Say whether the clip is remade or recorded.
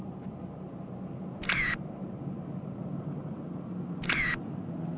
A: recorded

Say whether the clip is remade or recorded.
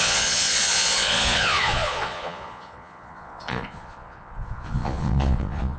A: remade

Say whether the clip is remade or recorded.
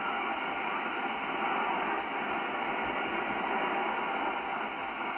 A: recorded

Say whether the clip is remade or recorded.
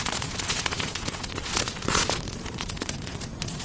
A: remade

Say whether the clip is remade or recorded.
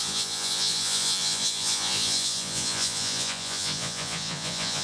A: remade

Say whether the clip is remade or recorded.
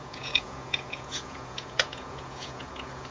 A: remade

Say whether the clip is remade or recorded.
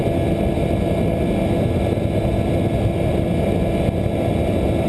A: recorded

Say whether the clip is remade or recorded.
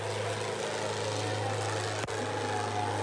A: recorded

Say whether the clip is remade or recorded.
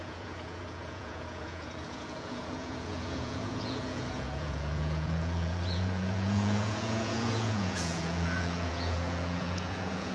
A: remade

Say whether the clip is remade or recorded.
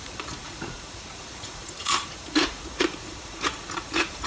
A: remade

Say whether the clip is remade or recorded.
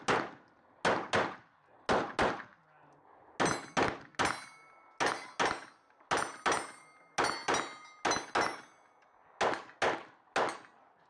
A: recorded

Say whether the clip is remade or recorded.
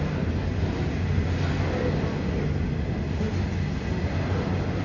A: recorded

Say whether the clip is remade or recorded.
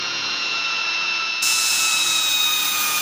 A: remade